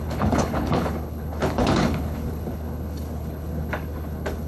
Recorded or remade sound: remade